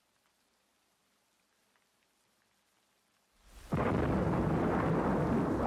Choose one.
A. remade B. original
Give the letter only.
B